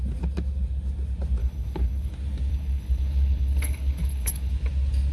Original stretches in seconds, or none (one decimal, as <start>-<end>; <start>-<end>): 0.0-1.4; 2.1-2.5; 4.5-5.1